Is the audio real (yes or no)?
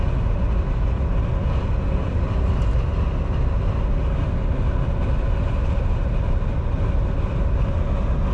yes